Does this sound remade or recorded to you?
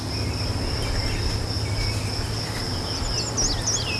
recorded